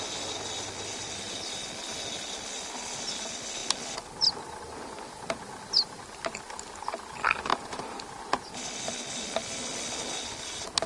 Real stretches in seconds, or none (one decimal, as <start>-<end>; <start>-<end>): 0.0-10.9